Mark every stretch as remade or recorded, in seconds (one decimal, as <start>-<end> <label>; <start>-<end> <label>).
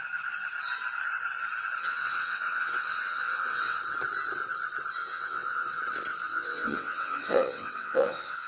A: 0.0-1.8 recorded; 1.8-3.8 remade; 3.8-5.0 recorded; 5.0-5.8 remade; 5.8-6.3 recorded; 6.3-8.5 remade